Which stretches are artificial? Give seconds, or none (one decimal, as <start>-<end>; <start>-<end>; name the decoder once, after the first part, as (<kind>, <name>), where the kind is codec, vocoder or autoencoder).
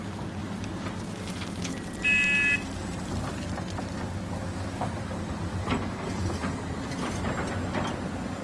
none